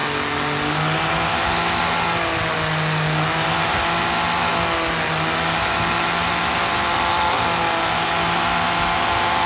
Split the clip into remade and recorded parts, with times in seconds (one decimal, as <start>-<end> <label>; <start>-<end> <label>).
0.0-9.5 recorded